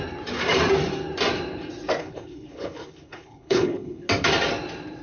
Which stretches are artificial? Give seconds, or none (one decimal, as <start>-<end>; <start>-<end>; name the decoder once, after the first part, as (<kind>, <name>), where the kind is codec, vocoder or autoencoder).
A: 2.0-4.1 (codec, HILCodec)